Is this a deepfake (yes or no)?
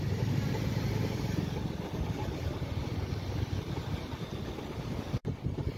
yes